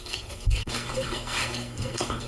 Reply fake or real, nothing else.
fake